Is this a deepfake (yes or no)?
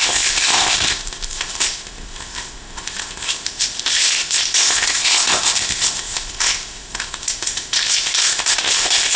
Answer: yes